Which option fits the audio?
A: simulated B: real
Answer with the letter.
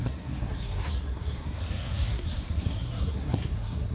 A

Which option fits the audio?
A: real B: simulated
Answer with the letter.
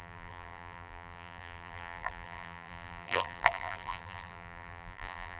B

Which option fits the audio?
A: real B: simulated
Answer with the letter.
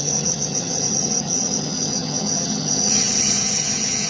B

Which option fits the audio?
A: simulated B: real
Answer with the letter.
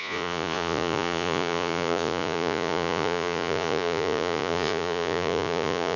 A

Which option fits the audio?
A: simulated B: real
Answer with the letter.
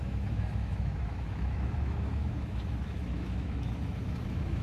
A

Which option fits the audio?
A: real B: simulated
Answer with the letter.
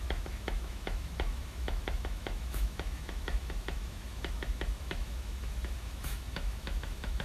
B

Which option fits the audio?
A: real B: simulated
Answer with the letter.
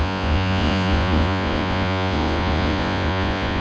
B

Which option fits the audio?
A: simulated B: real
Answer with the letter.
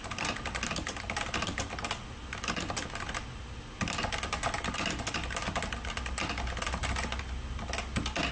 B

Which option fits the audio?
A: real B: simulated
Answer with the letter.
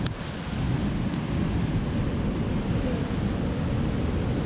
A